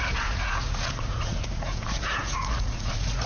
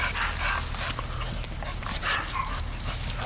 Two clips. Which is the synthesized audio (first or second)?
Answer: first